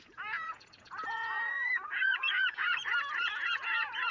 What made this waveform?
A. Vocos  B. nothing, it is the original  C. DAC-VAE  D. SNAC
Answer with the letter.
A